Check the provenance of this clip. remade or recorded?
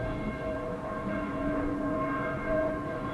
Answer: remade